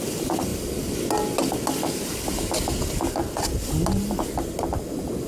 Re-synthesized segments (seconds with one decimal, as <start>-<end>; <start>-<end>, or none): none